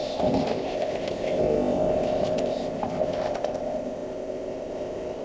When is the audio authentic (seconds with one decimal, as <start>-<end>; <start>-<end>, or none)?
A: none